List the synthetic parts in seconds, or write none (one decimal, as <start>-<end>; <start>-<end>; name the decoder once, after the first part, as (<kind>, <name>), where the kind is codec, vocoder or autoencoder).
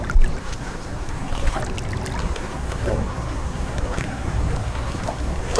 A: 0.4-1.6 (codec, SNAC); 2.2-5.6